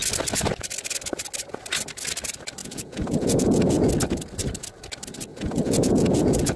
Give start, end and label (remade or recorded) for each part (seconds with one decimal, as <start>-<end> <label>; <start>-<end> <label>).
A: 0.0-2.6 recorded; 2.6-3.9 remade; 3.9-5.3 recorded; 5.3-6.6 remade